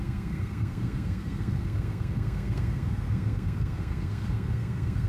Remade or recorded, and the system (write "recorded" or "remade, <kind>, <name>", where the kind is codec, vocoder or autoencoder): remade, codec, SNAC